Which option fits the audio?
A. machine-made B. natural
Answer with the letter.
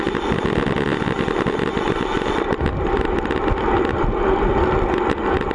B